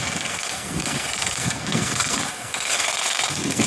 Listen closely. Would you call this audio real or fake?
fake